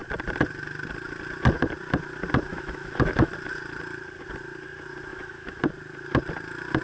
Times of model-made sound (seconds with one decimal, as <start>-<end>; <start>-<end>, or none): 2.5-3.3; 5.1-5.6